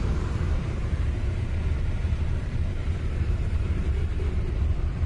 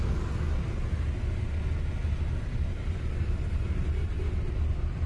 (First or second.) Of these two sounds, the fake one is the first